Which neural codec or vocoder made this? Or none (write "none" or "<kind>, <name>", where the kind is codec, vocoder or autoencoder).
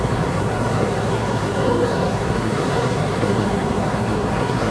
codec, SNAC